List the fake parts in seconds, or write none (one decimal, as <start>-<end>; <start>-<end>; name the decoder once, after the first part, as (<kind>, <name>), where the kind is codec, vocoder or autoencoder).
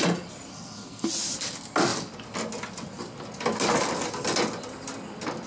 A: 0.5-1.1 (codec, SNAC)